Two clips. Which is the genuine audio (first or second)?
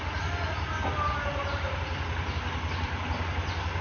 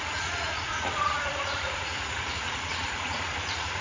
first